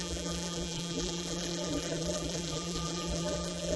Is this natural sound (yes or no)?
no